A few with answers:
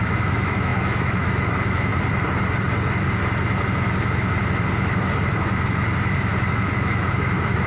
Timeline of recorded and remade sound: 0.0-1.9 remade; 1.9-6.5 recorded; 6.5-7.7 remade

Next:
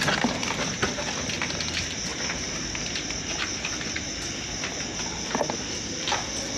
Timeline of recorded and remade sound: 0.0-6.6 recorded

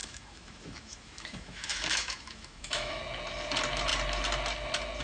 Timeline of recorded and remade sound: 0.0-3.0 remade; 3.0-5.0 recorded

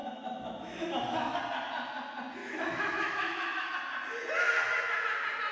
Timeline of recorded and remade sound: 0.0-1.4 remade; 1.4-2.4 recorded; 2.4-3.7 remade; 3.7-5.5 recorded